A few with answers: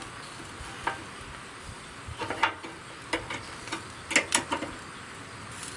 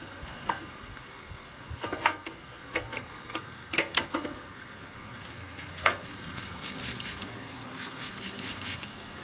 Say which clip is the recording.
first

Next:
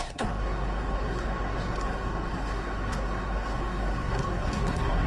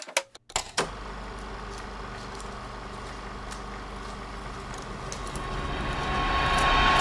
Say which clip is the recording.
second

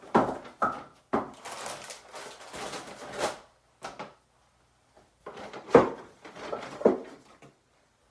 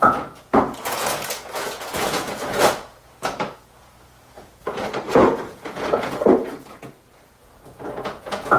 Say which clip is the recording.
first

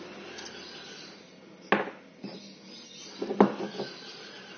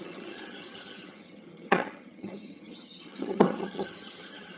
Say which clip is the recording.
first